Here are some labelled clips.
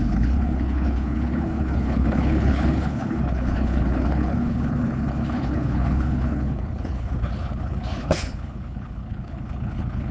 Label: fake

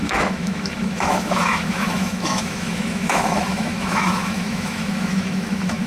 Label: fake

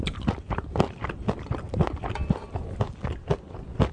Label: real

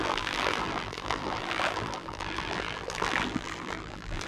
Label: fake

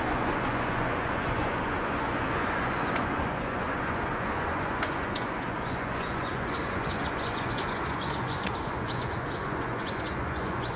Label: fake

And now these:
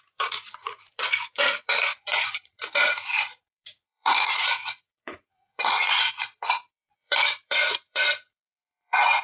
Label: fake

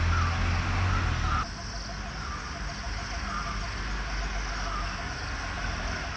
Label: real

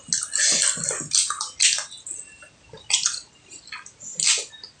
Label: real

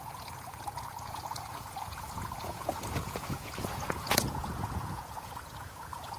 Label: fake